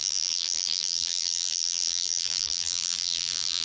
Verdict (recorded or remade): remade